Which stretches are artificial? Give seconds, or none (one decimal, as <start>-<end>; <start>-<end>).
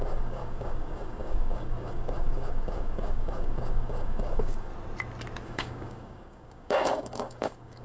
0.0-4.7; 5.4-7.8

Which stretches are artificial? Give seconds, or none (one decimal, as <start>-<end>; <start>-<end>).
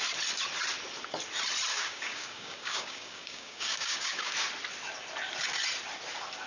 1.7-4.3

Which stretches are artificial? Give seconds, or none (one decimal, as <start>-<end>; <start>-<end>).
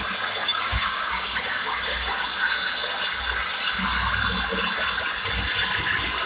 0.4-2.2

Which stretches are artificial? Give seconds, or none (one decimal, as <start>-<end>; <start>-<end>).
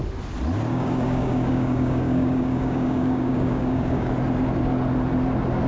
0.7-4.1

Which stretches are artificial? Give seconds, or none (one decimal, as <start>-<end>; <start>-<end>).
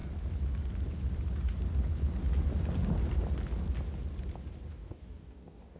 4.7-5.8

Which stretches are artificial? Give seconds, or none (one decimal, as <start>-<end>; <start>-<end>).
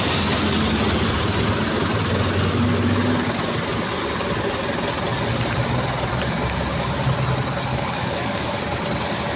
7.7-8.6